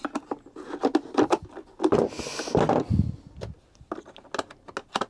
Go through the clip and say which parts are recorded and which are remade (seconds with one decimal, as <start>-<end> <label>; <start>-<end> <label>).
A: 0.0-5.1 recorded